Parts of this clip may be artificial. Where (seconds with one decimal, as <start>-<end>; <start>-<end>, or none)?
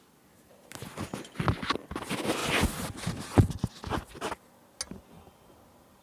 none